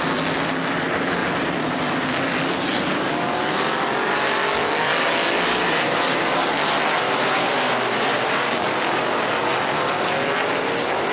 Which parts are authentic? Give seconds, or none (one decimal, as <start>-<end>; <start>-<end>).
0.0-8.1; 9.1-11.1